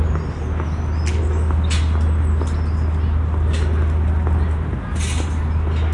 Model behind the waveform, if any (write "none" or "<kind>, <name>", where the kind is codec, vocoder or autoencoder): none